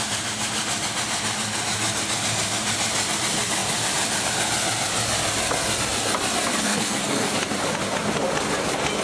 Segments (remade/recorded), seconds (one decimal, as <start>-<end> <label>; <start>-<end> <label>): 0.0-6.5 recorded; 6.5-7.3 remade; 7.3-9.0 recorded